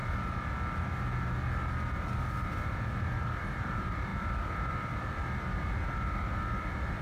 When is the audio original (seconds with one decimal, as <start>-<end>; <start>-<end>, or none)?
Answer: 0.0-3.4